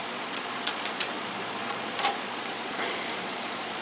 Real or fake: fake